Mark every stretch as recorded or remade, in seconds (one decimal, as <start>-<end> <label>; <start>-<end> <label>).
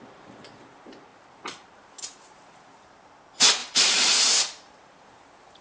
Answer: 0.0-1.1 recorded; 1.1-2.9 remade; 2.9-3.6 recorded; 3.6-5.6 remade